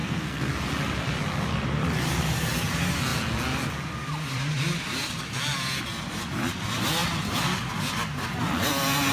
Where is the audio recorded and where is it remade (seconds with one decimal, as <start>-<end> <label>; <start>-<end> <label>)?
0.0-0.5 remade; 0.5-9.1 recorded